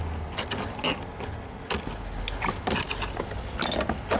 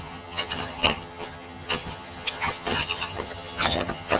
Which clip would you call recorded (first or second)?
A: first